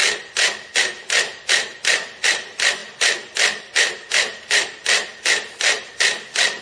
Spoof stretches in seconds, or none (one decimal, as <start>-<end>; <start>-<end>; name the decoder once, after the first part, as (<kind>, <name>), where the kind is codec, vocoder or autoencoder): 0.8-6.6 (vocoder, BigVGAN v2)